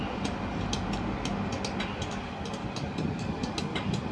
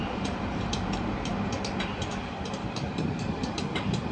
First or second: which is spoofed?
second